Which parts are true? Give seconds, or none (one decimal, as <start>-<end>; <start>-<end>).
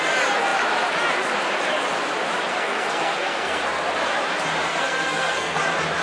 0.0-2.5; 3.6-4.7; 5.6-6.0